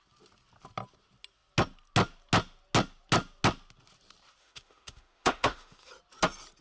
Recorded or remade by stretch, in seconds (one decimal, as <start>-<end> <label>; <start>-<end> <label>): 0.0-4.4 recorded; 4.4-5.9 remade; 5.9-6.6 recorded